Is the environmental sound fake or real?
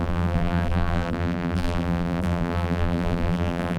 fake